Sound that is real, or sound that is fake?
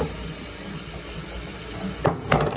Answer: real